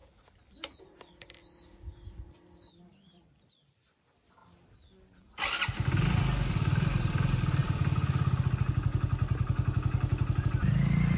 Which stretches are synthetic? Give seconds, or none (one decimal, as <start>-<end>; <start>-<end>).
0.8-4.4; 6.5-7.6; 10.4-11.2